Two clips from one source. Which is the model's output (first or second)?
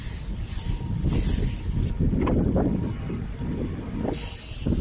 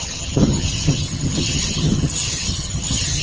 second